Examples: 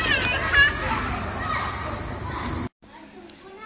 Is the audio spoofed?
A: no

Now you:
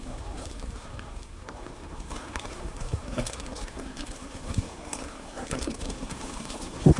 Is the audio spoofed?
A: yes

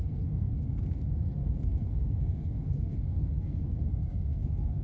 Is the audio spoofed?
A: yes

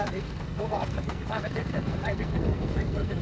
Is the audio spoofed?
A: yes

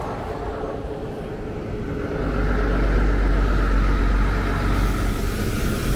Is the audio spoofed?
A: no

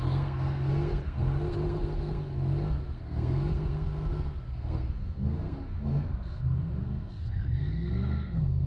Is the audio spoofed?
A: yes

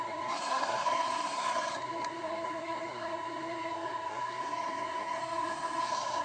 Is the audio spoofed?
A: yes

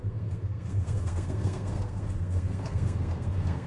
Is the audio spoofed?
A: yes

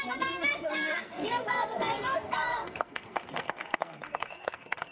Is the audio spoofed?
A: yes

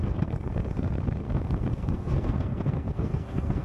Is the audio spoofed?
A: yes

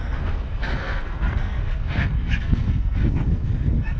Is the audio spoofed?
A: yes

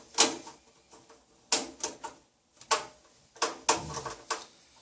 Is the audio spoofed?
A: no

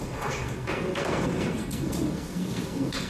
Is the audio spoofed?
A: yes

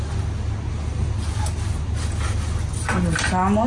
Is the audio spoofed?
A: no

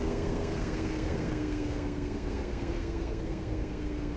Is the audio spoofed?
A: yes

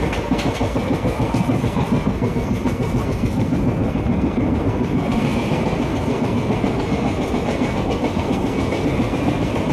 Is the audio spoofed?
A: yes